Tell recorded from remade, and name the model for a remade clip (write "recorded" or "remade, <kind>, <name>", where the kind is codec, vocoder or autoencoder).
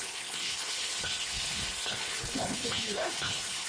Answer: remade, codec, HILCodec